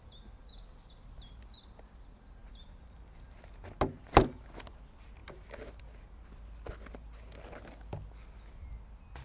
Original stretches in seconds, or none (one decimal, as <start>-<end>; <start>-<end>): 0.0-2.4; 3.3-9.2